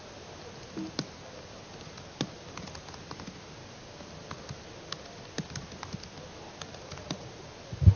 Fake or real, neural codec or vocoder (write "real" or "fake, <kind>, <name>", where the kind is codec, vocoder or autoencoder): real